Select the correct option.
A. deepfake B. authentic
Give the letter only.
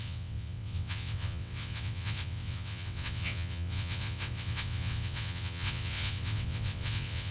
A